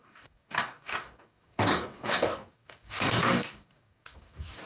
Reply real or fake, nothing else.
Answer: fake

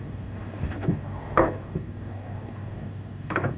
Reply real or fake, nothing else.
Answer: fake